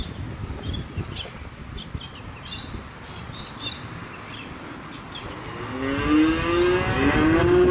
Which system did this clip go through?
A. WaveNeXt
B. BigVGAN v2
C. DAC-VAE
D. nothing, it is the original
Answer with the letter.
D